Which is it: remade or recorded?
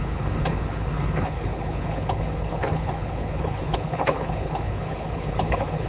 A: remade